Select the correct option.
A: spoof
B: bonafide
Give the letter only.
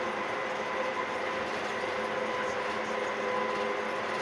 B